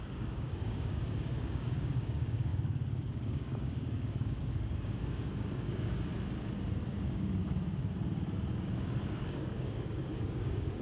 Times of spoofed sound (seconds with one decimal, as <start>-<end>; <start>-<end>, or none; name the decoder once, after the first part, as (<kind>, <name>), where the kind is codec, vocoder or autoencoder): 0.0-6.1 (codec, DAC); 7.0-7.4; 9.1-10.8